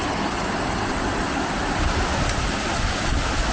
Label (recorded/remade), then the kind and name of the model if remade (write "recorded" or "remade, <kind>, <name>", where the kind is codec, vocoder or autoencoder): recorded